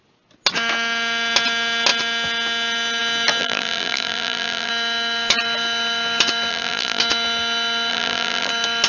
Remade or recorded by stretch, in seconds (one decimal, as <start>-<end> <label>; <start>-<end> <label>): 0.0-3.4 recorded; 3.4-4.7 remade; 4.7-6.5 recorded; 6.5-7.0 remade; 7.0-7.9 recorded; 7.9-8.5 remade; 8.5-8.9 recorded